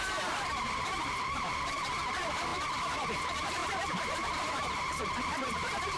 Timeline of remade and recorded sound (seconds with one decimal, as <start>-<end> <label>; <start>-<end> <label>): 0.0-2.5 remade; 2.5-3.2 recorded; 3.2-6.0 remade